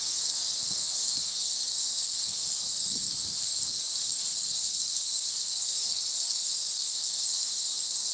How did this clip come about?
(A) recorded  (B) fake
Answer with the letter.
B